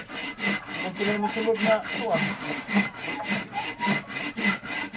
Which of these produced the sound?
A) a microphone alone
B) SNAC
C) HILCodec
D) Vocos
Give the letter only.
A